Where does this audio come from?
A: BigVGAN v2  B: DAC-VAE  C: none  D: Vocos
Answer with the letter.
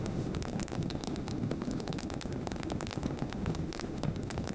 B